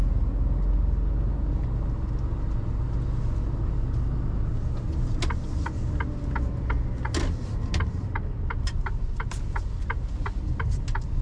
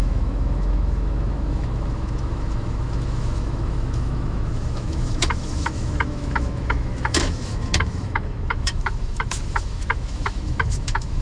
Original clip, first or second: first